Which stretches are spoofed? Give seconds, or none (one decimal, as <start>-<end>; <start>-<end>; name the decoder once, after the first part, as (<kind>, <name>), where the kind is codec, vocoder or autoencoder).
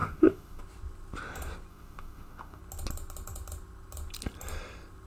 0.0-0.6 (autoencoder, DAC-VAE); 1.7-2.6